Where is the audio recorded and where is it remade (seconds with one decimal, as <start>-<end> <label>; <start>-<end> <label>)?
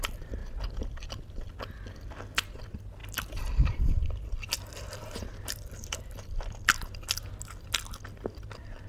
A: 0.0-0.4 recorded; 0.4-1.5 remade; 1.5-3.0 recorded; 3.0-7.3 remade; 7.3-8.9 recorded